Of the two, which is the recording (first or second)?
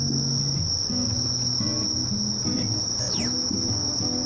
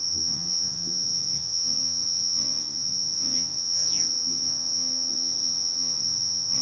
first